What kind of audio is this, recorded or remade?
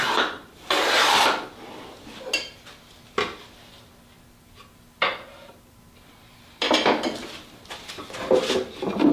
recorded